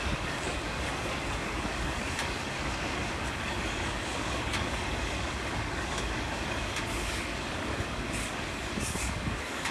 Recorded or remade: remade